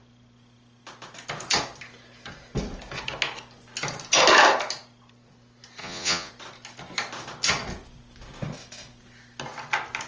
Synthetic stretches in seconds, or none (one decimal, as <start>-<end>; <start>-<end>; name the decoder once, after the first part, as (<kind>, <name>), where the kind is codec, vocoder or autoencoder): 5.8-6.3 (vocoder, Vocos)